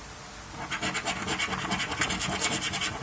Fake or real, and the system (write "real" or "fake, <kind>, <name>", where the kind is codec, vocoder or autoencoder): real